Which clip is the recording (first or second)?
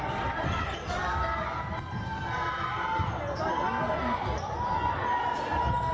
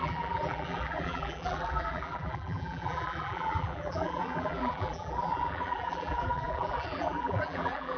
first